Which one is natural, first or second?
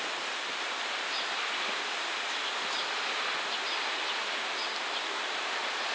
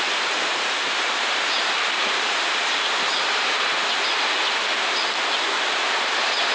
first